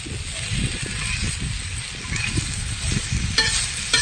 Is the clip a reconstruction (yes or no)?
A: no